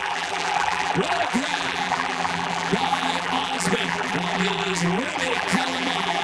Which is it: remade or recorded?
remade